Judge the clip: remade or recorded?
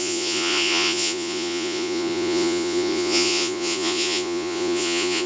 remade